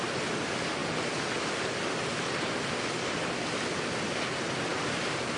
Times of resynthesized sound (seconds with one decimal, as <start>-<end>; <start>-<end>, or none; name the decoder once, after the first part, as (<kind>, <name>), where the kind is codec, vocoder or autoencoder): none